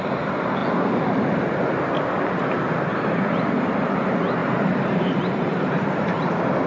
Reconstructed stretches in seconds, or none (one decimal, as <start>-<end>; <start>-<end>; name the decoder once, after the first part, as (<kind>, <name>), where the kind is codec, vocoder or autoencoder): 4.4-6.3 (vocoder, BigVGAN v2)

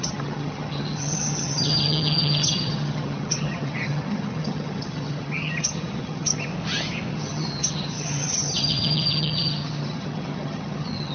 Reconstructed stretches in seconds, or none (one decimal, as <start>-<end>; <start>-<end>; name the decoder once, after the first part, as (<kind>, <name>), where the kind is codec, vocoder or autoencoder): 0.0-6.5 (vocoder, HiFi-GAN); 7.1-11.1